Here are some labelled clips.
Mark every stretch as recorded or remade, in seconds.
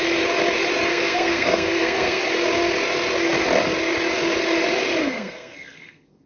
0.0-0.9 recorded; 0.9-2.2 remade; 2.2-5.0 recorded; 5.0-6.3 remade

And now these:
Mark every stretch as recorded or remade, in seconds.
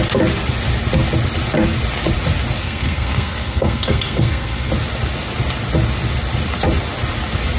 0.0-2.6 recorded; 2.6-4.7 remade; 4.7-7.6 recorded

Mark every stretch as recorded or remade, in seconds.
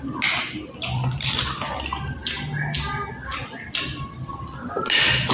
0.0-5.3 recorded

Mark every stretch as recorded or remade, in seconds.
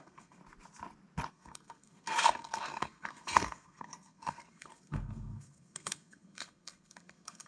0.0-0.4 remade; 0.4-1.3 recorded; 1.3-7.5 remade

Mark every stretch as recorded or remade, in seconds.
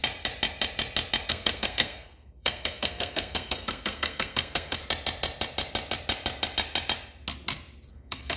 0.0-1.3 recorded; 1.3-4.8 remade; 4.8-7.9 recorded; 7.9-8.4 remade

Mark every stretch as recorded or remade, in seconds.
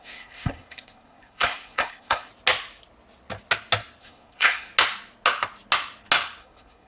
0.0-2.3 remade; 2.3-4.0 recorded; 4.0-4.7 remade; 4.7-6.4 recorded; 6.4-6.9 remade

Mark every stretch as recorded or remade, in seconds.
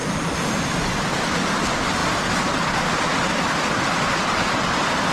0.0-5.1 recorded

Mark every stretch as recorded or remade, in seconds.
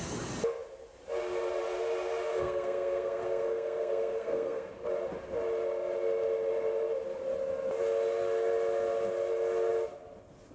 0.0-2.3 recorded; 2.3-4.7 remade; 4.7-10.5 recorded